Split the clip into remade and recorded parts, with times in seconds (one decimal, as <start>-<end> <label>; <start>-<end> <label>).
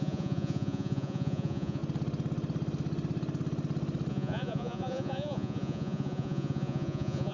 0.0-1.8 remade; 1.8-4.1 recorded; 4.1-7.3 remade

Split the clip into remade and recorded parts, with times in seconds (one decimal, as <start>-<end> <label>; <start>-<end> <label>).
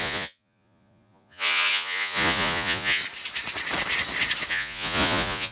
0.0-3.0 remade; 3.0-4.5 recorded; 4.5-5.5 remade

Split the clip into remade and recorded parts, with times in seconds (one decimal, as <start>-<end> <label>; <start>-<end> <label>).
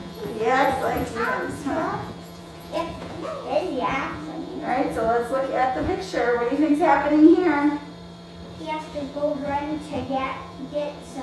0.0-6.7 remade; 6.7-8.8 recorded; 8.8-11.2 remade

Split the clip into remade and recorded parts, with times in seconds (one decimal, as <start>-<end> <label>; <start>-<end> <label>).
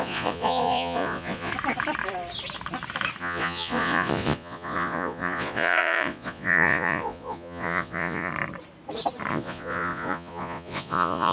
0.0-1.5 remade; 1.5-3.2 recorded; 3.2-8.3 remade; 8.3-9.3 recorded; 9.3-11.3 remade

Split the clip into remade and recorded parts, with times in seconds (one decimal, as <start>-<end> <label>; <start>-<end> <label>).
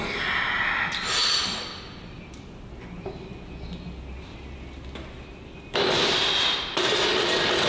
0.0-7.7 recorded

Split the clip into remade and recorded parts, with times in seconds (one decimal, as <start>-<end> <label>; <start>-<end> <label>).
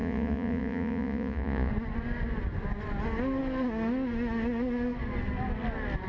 0.0-1.7 remade; 1.7-6.1 recorded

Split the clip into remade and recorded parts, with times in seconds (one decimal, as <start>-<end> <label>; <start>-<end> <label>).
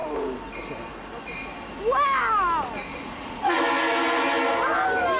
0.0-2.9 recorded; 2.9-3.6 remade; 3.6-5.2 recorded